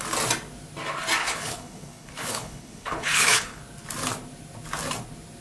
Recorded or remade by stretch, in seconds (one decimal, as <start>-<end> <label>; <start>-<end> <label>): 0.0-1.2 recorded; 1.2-3.6 remade; 3.6-5.4 recorded

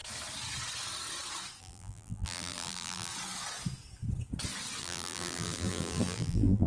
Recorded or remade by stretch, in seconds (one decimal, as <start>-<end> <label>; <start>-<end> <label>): 0.0-1.6 recorded; 1.6-3.1 remade; 3.1-4.8 recorded; 4.8-6.7 remade

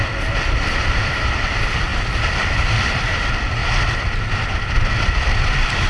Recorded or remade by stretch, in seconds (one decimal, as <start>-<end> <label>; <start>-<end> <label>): 0.0-3.6 remade; 3.6-4.3 recorded; 4.3-5.9 remade